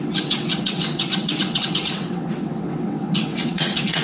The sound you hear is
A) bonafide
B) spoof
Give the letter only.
B